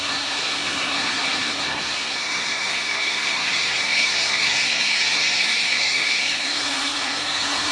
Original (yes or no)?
no